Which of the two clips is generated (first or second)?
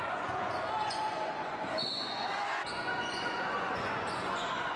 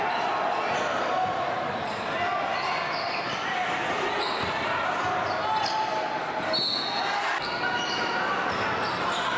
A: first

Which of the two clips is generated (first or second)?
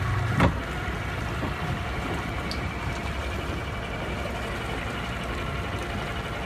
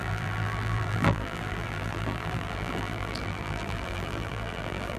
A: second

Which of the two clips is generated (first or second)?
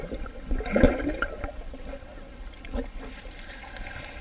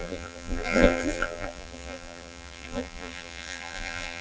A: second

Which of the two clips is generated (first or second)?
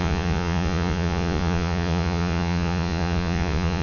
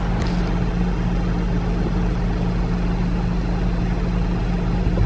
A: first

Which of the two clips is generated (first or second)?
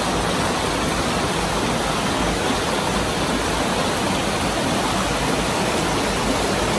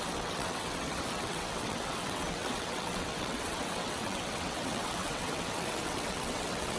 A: second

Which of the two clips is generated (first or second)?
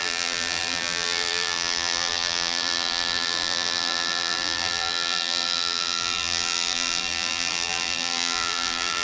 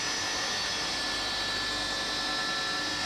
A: first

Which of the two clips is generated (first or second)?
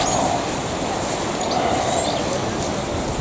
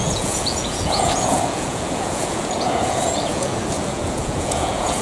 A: second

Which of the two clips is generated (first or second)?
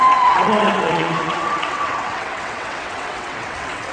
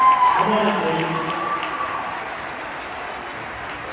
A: first